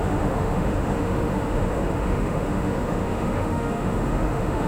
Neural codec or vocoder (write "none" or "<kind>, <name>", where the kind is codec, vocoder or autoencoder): autoencoder, DAC-VAE